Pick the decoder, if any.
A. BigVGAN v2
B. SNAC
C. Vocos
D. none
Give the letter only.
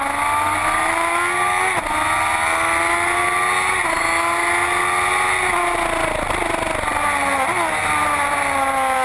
D